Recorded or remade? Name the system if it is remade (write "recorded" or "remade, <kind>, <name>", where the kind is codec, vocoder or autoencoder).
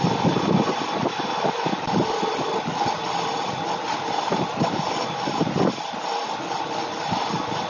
recorded